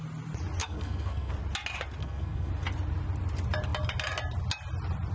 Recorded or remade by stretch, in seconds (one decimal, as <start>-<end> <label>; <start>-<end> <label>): 0.0-0.6 recorded; 0.6-1.3 remade; 1.3-2.0 recorded; 2.0-2.5 remade; 2.5-5.1 recorded